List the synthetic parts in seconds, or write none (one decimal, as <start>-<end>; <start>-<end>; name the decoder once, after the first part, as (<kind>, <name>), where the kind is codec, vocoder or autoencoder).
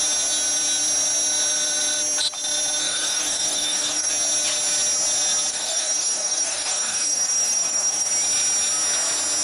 2.8-4.1 (codec, DAC); 5.5-8.1